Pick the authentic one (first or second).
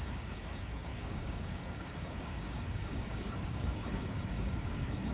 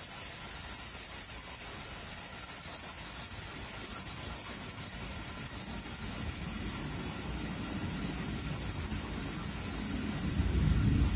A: second